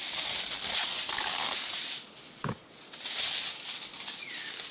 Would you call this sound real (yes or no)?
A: yes